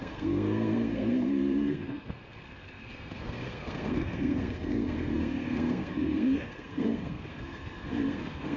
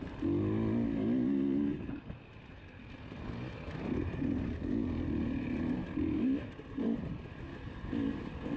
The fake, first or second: first